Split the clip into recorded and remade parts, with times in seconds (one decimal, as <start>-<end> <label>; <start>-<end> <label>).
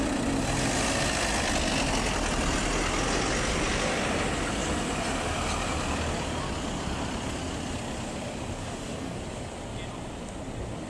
0.0-8.6 recorded; 8.6-9.2 remade; 9.2-10.9 recorded